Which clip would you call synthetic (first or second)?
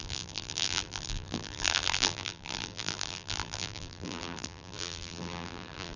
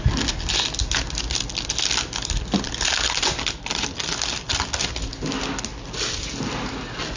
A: first